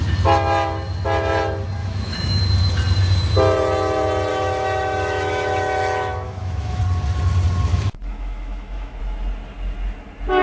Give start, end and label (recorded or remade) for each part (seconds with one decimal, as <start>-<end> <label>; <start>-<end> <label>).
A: 0.0-1.8 recorded; 1.8-2.4 remade; 2.4-4.3 recorded; 4.3-6.8 remade; 6.8-7.7 recorded; 7.7-9.0 remade; 9.0-10.4 recorded